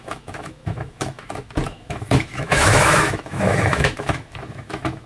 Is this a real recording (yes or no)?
no